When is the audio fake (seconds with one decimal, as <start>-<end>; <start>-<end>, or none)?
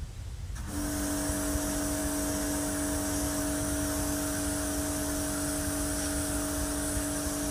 none